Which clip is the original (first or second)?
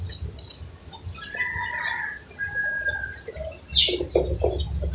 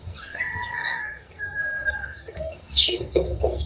first